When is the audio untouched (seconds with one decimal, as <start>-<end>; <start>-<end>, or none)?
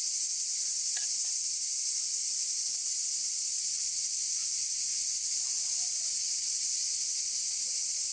0.0-6.2; 6.7-8.1